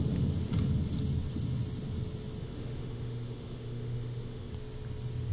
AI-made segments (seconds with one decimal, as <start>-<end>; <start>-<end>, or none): 2.4-4.5